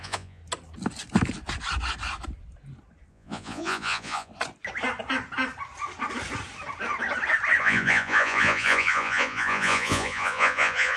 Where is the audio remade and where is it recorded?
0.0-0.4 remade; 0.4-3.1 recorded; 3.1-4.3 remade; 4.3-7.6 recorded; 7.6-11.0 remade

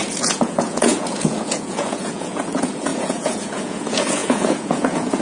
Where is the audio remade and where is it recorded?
0.0-5.2 remade

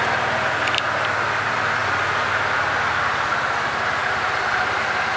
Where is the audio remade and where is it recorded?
0.0-5.2 recorded